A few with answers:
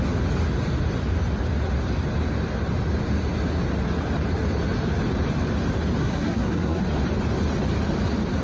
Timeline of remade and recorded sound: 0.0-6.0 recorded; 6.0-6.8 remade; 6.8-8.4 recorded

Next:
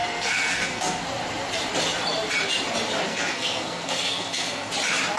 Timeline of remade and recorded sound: 0.0-1.0 remade; 1.0-3.1 recorded; 3.1-4.7 remade; 4.7-5.2 recorded

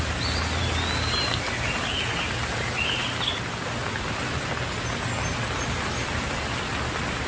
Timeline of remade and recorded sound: 0.0-7.3 recorded

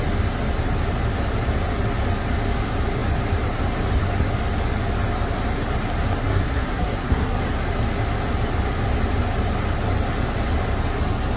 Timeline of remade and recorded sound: 0.0-6.2 recorded; 6.2-7.4 remade; 7.4-11.4 recorded

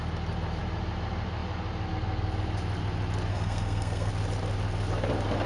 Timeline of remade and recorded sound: 0.0-3.3 recorded; 3.3-4.1 remade; 4.1-5.5 recorded

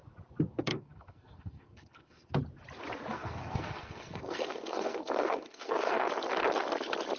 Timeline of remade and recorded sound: 0.0-0.7 recorded; 0.7-2.3 remade; 2.3-3.1 recorded; 3.1-6.1 remade; 6.1-7.2 recorded